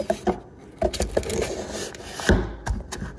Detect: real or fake real